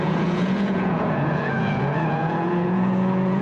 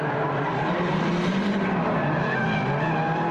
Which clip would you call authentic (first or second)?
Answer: second